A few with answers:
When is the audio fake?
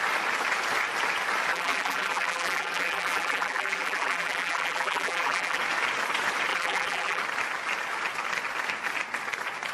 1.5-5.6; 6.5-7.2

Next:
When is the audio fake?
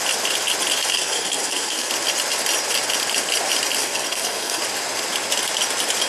0.9-1.9; 3.8-4.6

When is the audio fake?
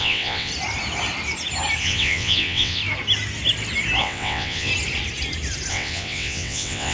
0.0-0.5; 1.8-2.8; 4.0-4.7; 5.7-6.9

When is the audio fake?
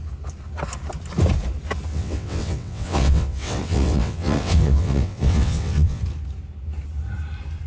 1.9-6.0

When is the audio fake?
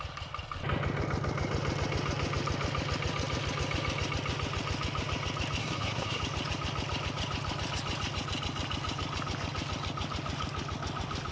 5.6-6.2